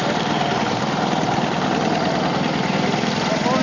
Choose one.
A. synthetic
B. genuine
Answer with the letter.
B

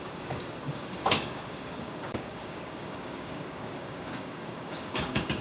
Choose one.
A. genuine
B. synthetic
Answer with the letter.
B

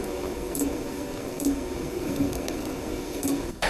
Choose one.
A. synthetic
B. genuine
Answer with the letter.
A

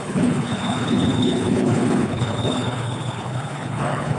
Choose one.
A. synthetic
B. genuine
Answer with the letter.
A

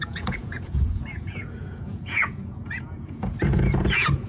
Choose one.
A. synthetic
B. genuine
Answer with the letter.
A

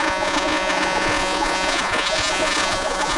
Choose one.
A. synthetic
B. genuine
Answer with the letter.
A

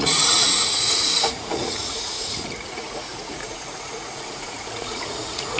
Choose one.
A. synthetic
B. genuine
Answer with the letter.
A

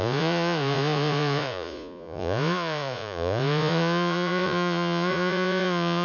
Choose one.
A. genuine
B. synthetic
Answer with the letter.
B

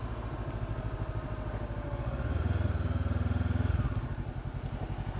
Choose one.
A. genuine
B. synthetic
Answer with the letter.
A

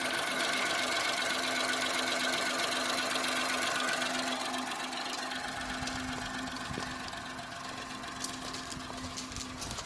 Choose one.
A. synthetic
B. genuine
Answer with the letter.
B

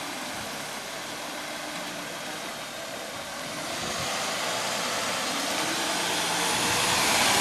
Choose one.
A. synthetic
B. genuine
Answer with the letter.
B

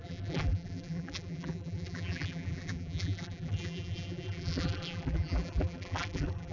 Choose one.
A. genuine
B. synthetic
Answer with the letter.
B